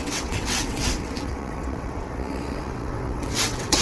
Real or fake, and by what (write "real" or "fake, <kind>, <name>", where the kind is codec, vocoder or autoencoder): fake, vocoder, WaveNeXt